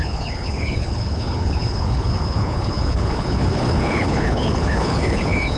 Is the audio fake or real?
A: fake